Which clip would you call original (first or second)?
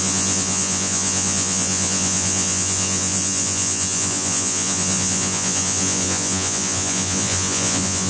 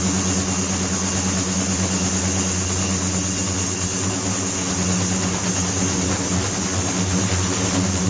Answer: second